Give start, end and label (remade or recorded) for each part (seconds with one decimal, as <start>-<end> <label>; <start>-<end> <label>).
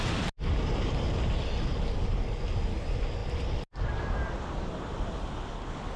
0.0-6.0 recorded